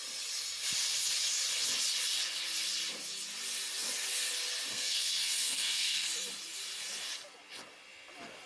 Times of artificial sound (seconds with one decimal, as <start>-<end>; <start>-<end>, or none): 4.7-6.1